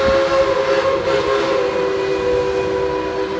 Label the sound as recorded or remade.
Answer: recorded